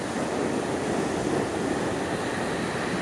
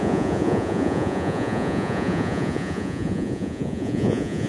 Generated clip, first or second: second